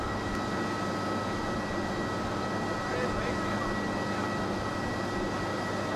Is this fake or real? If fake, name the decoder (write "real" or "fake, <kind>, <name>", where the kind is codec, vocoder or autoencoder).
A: real